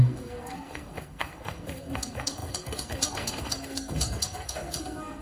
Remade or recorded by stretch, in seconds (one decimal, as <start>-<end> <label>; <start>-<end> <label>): 0.0-5.2 remade